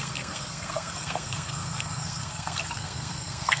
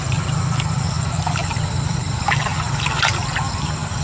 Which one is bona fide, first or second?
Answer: second